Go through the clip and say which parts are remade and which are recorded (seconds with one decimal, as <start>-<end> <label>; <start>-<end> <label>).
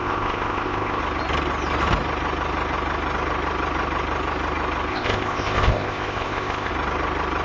0.0-1.0 remade; 1.0-4.9 recorded; 4.9-6.7 remade; 6.7-7.4 recorded